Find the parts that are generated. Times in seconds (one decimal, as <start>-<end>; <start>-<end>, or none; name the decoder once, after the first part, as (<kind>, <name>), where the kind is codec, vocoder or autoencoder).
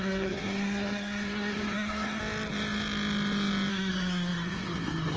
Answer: 0.0-2.2 (codec, SNAC); 3.7-5.2